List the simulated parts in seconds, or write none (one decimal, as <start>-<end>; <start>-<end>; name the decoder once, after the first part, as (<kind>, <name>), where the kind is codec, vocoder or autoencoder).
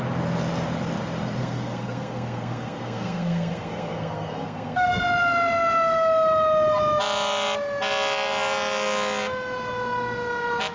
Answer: 1.4-5.0 (codec, SNAC)